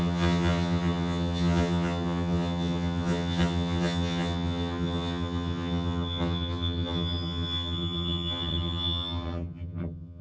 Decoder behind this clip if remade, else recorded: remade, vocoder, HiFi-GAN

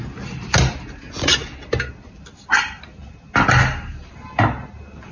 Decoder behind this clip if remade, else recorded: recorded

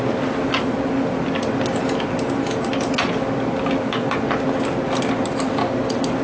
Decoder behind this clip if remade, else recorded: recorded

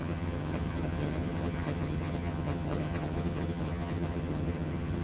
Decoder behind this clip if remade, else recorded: remade, vocoder, HiFi-GAN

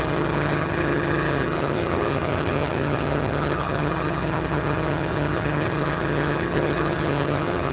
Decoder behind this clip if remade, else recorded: remade, vocoder, HiFi-GAN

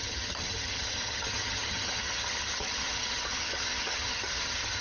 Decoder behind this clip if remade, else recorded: remade, vocoder, HiFi-GAN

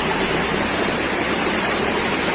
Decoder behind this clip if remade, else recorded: recorded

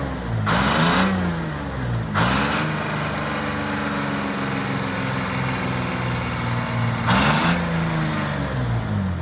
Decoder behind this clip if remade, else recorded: recorded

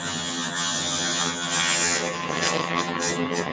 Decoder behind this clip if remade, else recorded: remade, vocoder, HiFi-GAN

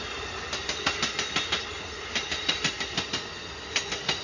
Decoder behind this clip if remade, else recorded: recorded